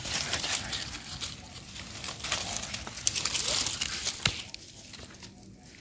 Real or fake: real